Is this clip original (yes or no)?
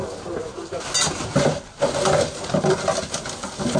yes